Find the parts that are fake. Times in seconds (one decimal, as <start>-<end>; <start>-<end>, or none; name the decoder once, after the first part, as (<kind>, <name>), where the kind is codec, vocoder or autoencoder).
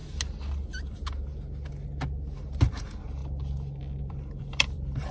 2.6-3.2 (vocoder, BigVGAN v2); 4.0-5.1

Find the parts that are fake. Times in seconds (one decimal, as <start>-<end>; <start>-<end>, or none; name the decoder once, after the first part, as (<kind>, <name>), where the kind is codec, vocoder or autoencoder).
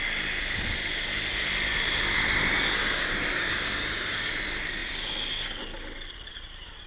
2.8-4.3 (codec, DAC)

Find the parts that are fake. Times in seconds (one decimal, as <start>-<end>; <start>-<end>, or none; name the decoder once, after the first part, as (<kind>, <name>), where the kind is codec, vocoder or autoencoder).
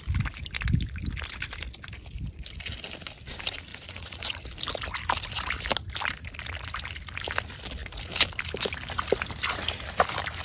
3.7-4.4 (vocoder, Vocos)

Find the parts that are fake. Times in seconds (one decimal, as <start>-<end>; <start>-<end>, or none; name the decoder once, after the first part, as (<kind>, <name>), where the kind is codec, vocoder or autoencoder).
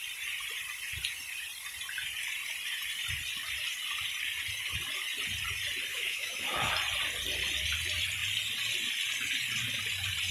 5.9-6.7 (autoencoder, DAC-VAE)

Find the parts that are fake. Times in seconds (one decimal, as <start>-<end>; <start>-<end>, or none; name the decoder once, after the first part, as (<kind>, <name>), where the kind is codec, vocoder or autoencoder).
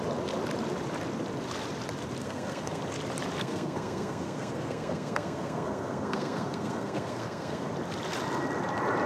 2.2-2.8 (codec, SNAC); 3.4-7.7